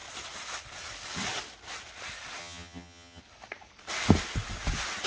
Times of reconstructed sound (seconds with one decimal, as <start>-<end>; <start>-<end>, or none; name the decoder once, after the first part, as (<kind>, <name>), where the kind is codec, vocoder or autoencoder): 2.4-3.2 (vocoder, HiFi-GAN)